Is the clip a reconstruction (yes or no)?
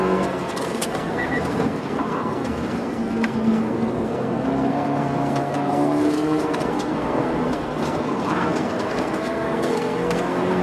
yes